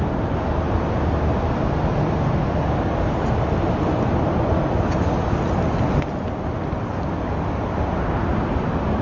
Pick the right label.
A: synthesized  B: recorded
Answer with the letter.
B